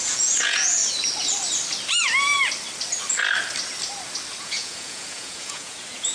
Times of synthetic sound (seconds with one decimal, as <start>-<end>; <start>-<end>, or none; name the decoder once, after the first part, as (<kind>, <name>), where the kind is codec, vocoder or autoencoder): 0.0-0.8 (vocoder, Vocos); 4.4-6.1